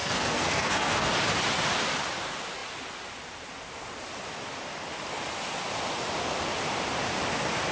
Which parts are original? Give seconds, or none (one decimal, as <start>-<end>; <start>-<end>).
1.1-7.7